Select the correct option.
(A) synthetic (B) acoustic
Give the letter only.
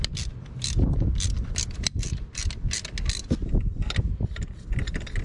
B